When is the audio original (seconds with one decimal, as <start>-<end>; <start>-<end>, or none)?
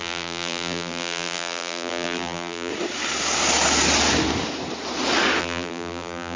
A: 2.7-5.4